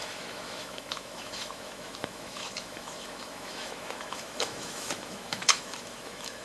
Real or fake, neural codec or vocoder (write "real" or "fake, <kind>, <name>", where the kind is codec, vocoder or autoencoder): fake, autoencoder, DAC-VAE